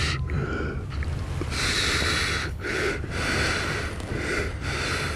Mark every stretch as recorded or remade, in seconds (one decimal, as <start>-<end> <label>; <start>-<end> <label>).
0.0-2.4 recorded; 2.4-2.9 remade; 2.9-5.2 recorded